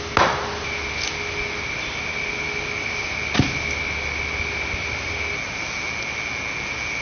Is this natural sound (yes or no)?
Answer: yes